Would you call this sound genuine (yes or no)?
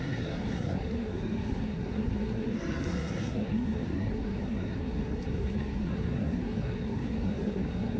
no